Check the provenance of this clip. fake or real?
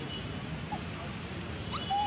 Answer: real